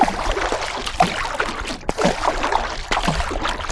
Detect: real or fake real